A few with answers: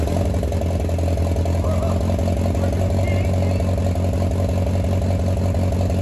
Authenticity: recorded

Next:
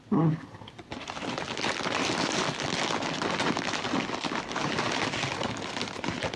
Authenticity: recorded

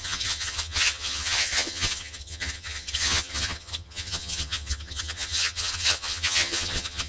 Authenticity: remade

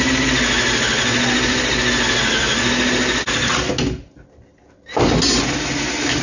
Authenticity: recorded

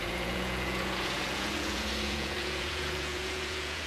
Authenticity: remade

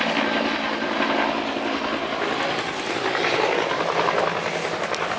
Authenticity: recorded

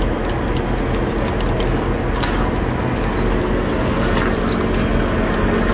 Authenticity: recorded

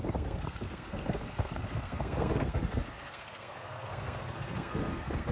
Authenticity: remade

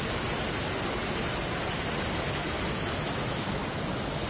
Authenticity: recorded